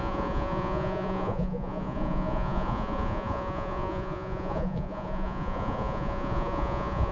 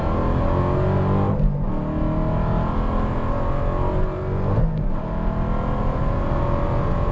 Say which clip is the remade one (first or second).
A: first